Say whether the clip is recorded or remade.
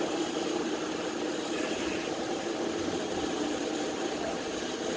remade